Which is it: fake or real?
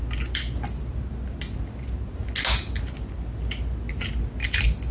real